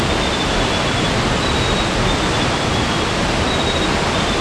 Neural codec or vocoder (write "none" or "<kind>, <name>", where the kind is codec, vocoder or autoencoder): none